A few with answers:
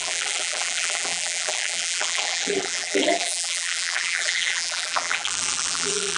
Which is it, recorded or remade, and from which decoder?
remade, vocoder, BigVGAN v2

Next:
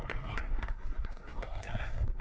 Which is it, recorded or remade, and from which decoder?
remade, codec, SNAC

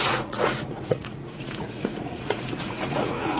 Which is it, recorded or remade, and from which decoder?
remade, vocoder, Vocos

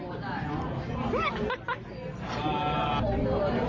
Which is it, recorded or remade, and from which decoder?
recorded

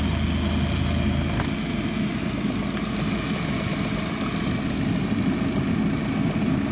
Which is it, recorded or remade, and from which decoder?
recorded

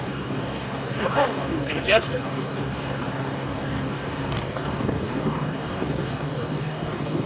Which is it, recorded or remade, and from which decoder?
remade, codec, DAC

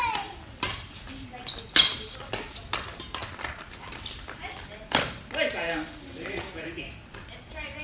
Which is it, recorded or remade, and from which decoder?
recorded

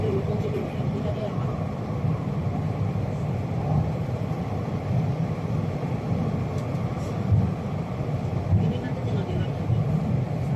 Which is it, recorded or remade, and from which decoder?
remade, vocoder, BigVGAN v2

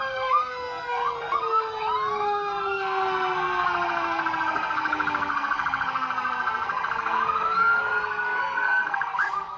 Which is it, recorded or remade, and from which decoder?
remade, codec, SNAC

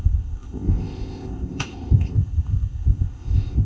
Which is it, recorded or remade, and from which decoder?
remade, codec, ZipCodec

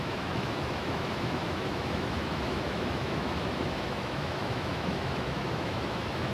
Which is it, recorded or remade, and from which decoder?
remade, autoencoder, DAC-VAE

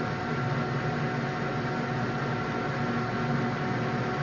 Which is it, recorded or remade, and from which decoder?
recorded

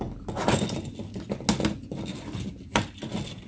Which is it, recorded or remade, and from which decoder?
recorded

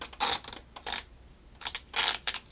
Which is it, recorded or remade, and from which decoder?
recorded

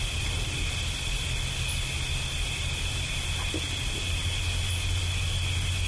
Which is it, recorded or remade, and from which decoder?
recorded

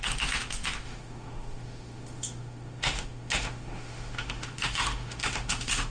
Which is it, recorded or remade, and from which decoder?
remade, autoencoder, DAC-VAE